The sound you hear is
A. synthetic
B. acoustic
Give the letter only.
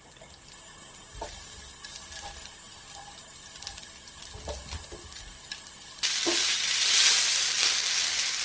B